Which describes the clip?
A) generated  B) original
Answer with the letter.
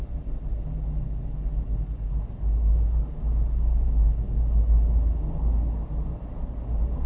B